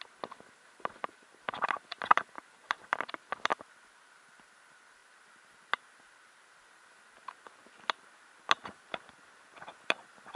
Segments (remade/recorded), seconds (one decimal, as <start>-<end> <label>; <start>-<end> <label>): 0.0-3.5 remade; 3.5-4.1 recorded; 4.1-5.0 remade; 5.0-9.1 recorded; 9.1-10.4 remade